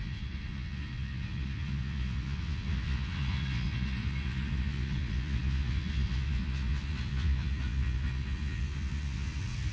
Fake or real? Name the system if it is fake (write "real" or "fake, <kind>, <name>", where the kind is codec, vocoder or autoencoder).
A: fake, vocoder, Vocos